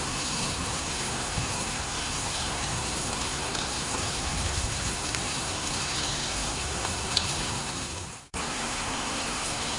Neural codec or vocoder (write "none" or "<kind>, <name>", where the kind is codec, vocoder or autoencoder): codec, SNAC